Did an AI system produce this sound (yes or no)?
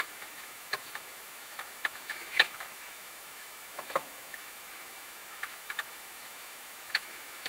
yes